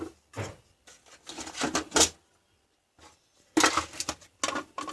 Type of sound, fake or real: real